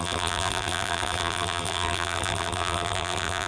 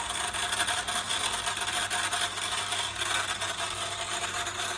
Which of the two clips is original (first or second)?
second